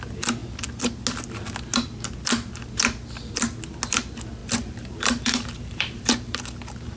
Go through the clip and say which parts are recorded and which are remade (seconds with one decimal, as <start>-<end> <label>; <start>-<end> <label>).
0.0-4.4 recorded; 4.4-7.0 remade